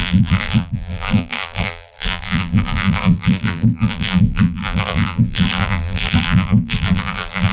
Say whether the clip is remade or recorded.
remade